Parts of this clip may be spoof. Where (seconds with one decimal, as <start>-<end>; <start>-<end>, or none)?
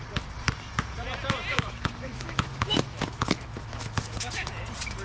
1.5-4.5